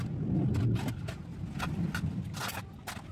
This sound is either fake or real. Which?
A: real